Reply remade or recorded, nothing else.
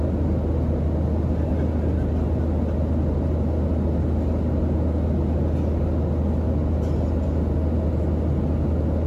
recorded